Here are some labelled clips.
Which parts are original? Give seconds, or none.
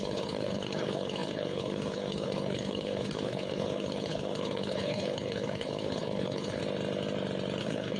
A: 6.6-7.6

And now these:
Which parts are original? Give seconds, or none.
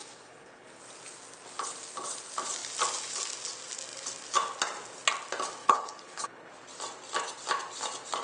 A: 0.8-5.6; 6.5-8.2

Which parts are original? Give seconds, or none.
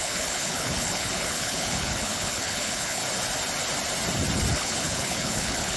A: 3.0-4.5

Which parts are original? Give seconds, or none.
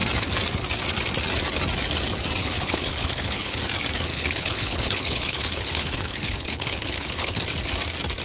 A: 0.0-2.4; 3.6-4.1; 7.4-8.2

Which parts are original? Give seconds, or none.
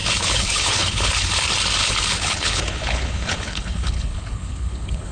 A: 1.3-1.8